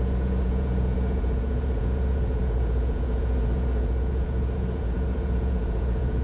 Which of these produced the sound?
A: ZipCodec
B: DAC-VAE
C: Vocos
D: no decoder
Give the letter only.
C